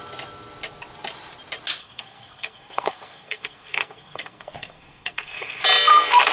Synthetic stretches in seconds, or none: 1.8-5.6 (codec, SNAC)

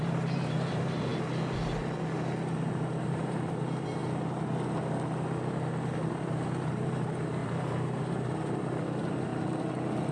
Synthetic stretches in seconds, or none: 0.0-1.1 (vocoder, BigVGAN v2); 3.0-4.0; 6.1-9.3

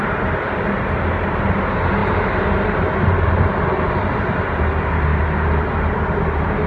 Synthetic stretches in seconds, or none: none